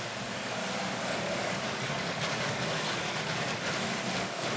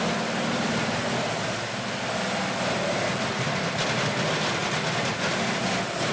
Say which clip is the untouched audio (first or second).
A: second